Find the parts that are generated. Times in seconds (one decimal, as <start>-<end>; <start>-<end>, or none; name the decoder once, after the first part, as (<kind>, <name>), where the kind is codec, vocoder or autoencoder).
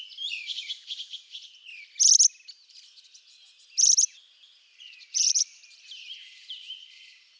0.0-1.6 (vocoder, BigVGAN v2); 4.6-7.4